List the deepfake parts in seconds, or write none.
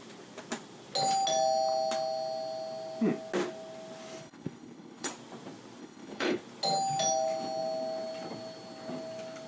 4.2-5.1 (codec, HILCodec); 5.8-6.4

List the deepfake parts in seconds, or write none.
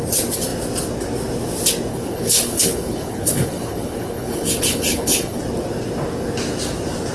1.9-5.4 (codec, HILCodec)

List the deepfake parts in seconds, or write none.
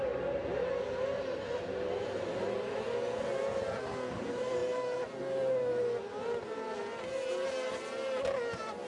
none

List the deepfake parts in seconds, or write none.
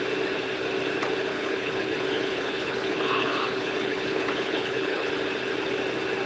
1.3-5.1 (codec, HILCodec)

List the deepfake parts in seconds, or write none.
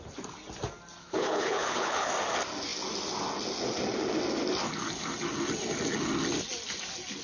1.0-2.1 (codec, HILCodec)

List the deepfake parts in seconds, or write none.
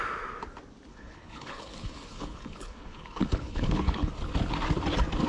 0.9-4.1 (codec, HILCodec)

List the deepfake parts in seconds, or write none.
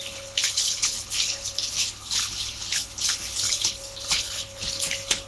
0.0-5.3 (codec, HILCodec)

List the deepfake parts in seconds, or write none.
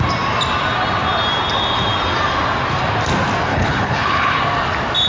3.5-4.4 (codec, HILCodec)